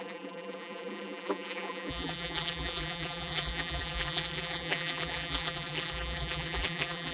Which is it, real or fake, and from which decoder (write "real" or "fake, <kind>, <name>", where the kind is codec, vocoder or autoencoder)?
fake, vocoder, BigVGAN v2